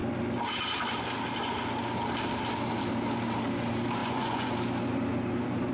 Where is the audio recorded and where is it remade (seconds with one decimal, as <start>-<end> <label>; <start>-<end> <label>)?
0.0-4.0 recorded; 4.0-4.5 remade; 4.5-5.7 recorded